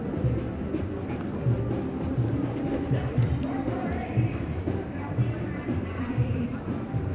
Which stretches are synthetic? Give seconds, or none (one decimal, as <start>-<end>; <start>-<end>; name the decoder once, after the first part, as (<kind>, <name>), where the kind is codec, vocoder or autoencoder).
2.3-6.6 (vocoder, BigVGAN v2)